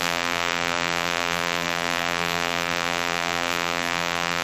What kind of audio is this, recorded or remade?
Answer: remade